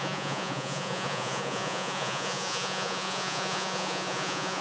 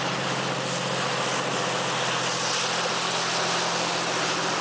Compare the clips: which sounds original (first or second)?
second